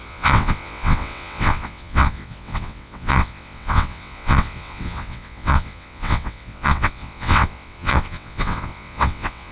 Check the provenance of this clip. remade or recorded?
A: remade